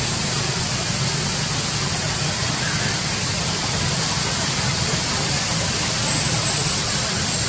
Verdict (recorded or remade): recorded